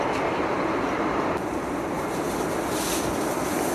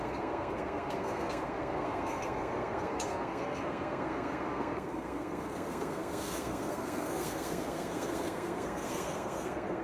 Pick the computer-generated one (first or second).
second